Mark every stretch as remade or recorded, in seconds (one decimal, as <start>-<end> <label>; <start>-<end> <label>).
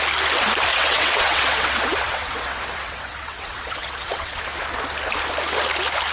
0.0-0.7 recorded; 0.7-4.4 remade; 4.4-6.1 recorded